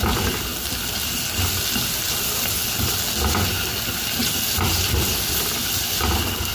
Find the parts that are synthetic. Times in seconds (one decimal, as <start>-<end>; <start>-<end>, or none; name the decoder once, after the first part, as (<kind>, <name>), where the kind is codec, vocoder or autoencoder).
0.5-1.5 (vocoder, BigVGAN v2)